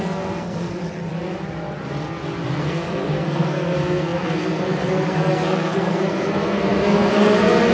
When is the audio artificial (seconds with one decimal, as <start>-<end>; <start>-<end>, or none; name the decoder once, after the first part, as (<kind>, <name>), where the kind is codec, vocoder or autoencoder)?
0.0-0.8 (codec, SNAC); 2.6-7.7

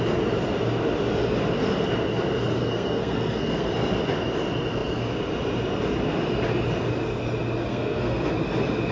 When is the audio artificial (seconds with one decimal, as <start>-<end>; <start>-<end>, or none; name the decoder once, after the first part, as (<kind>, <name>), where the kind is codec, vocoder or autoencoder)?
2.6-3.7 (codec, SNAC); 7.7-8.3

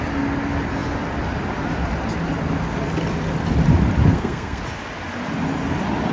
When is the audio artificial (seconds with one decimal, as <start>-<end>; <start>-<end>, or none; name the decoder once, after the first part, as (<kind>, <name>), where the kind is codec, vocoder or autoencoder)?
4.1-4.6 (codec, SNAC)

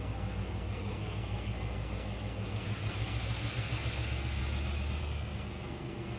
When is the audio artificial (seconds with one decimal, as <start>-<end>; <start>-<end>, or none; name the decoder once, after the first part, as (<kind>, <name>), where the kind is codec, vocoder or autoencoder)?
0.0-4.4 (codec, SNAC); 5.0-6.2